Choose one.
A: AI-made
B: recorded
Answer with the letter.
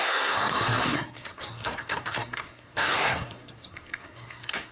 A